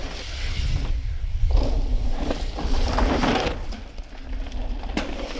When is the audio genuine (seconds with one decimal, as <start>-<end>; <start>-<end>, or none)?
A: 0.0-5.4

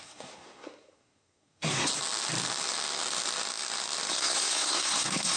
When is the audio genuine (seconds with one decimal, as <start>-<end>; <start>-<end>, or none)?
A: 1.9-4.1

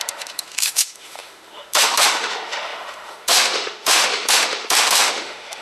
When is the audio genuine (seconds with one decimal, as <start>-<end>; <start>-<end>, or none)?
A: none

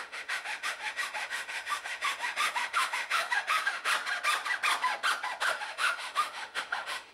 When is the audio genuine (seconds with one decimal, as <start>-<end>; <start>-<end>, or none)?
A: 3.9-5.4

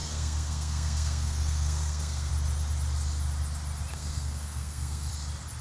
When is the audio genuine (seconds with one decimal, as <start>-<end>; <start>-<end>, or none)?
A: 2.3-3.9; 5.1-5.6

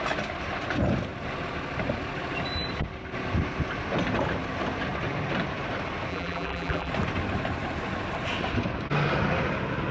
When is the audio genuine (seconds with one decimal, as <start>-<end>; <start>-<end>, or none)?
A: 0.0-6.1; 6.9-9.9

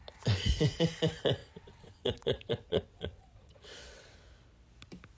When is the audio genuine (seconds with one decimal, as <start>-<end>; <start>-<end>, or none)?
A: 0.0-1.4; 4.1-5.2

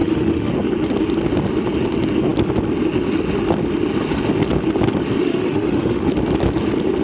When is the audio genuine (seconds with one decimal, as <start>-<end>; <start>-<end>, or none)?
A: 0.5-5.2; 6.1-7.0